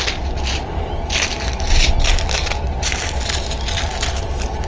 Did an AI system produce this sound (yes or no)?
no